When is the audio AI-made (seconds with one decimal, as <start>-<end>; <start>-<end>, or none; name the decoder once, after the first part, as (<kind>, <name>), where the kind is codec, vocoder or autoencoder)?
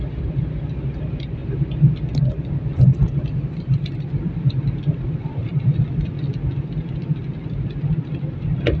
0.0-1.4 (vocoder, BigVGAN v2); 2.3-8.8